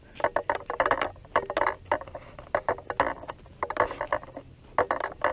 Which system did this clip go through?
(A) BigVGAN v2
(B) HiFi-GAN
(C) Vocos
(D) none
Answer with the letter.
D